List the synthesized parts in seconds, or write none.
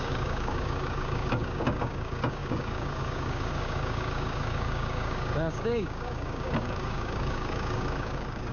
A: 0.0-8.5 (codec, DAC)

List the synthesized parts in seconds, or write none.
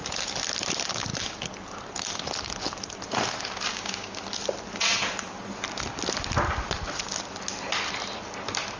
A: 3.7-4.2 (codec, DAC)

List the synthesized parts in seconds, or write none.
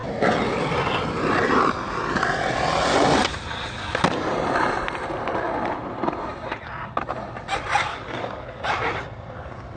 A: 7.9-8.6 (codec, DAC)